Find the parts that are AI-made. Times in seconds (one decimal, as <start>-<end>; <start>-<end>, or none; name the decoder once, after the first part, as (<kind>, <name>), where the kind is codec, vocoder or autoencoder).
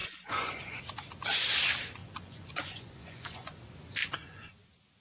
0.0-0.8 (vocoder, Vocos); 2.0-3.6; 4.0-4.6